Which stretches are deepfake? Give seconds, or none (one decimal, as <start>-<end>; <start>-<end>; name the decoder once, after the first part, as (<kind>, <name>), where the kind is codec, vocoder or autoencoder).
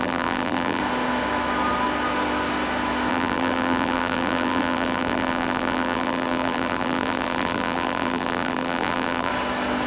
0.0-0.8 (vocoder, BigVGAN v2); 3.1-9.3